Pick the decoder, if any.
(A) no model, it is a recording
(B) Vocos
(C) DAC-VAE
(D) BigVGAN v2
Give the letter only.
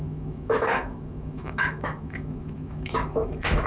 C